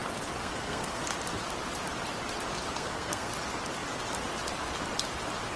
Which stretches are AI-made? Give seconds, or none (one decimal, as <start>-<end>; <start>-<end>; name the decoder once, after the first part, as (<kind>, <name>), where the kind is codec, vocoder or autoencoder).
0.4-1.0 (codec, SNAC); 2.7-3.3